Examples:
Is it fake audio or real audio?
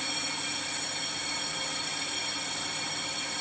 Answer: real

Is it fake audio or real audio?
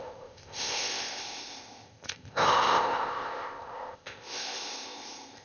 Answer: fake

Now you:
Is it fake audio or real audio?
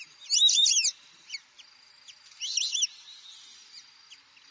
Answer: real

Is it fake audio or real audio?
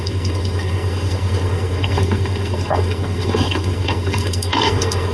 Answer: fake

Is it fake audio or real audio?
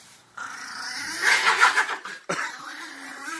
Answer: fake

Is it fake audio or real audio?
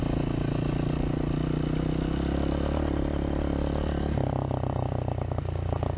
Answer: real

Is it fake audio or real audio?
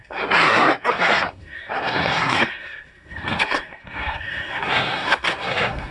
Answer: fake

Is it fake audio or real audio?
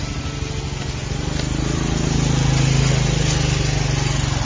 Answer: real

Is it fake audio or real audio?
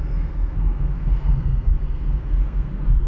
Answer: fake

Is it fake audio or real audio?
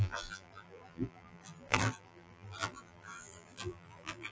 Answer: fake